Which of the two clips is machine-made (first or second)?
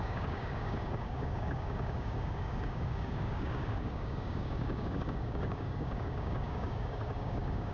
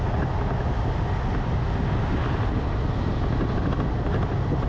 first